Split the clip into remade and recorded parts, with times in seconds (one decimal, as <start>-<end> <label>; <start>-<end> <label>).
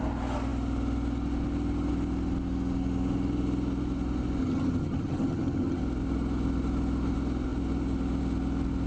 0.0-4.4 recorded; 4.4-5.8 remade; 5.8-8.9 recorded